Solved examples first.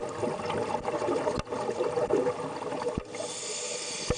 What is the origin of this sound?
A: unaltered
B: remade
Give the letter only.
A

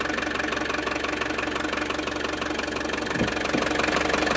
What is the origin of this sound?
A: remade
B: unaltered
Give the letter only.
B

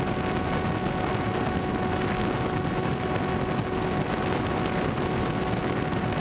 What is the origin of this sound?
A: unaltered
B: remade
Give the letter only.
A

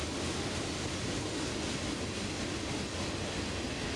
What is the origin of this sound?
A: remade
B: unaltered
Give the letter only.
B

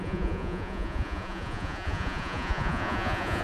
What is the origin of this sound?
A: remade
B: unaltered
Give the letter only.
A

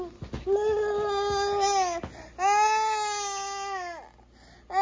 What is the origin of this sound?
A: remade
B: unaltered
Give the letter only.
B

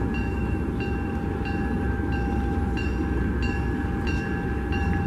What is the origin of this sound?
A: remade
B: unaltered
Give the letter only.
B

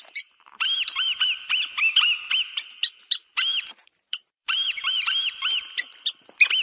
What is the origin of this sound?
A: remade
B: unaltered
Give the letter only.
A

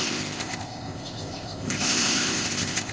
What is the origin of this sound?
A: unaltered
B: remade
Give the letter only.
B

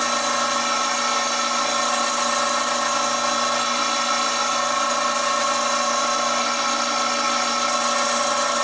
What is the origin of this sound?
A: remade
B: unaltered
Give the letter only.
B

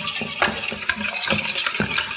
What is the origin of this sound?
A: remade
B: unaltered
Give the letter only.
B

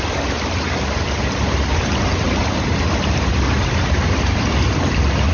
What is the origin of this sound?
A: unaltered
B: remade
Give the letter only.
A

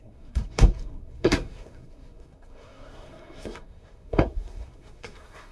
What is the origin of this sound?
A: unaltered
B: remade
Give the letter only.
B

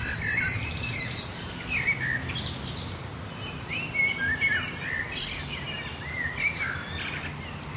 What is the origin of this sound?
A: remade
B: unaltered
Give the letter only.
B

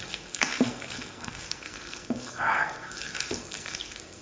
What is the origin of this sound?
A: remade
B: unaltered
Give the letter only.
A